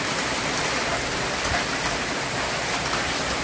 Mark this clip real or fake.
real